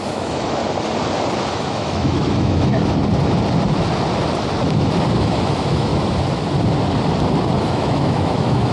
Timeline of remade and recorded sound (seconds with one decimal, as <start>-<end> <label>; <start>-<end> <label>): 0.0-0.6 remade; 0.6-1.5 recorded; 1.5-2.8 remade; 2.8-5.2 recorded; 5.2-5.9 remade; 5.9-7.6 recorded; 7.6-8.7 remade